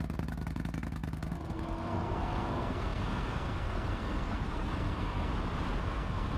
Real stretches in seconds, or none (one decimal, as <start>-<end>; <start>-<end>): 5.3-5.8